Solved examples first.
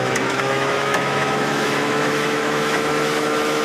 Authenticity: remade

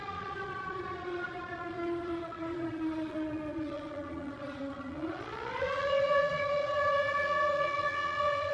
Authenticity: remade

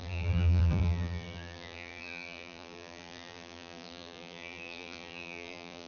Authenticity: remade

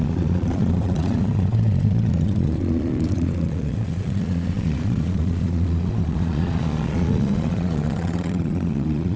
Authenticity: remade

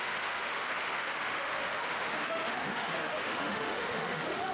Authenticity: remade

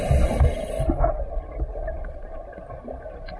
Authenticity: recorded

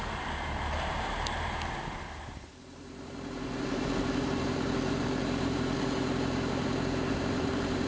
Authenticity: remade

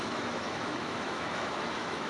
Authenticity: remade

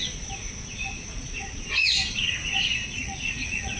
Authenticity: remade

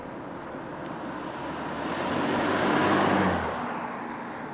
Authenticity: recorded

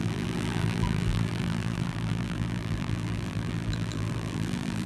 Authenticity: remade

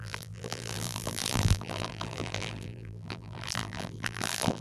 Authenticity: remade